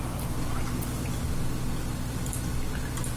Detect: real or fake real